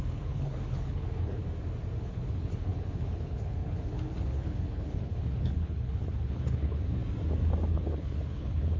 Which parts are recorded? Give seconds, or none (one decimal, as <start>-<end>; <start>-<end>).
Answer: 1.4-2.0; 7.0-7.7